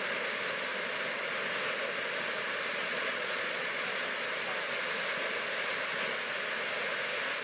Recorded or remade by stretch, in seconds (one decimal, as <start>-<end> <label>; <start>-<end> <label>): 0.0-2.8 recorded; 2.8-4.0 remade; 4.0-7.4 recorded